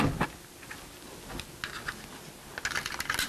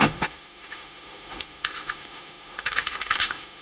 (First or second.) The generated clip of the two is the second